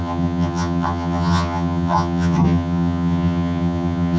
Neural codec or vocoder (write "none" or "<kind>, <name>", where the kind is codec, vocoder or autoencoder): vocoder, HiFi-GAN